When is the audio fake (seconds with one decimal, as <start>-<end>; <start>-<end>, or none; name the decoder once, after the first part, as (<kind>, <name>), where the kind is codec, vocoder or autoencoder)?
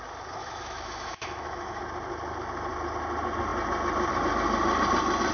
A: 0.4-1.8 (autoencoder, DAC-VAE)